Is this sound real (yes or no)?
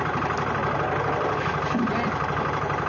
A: yes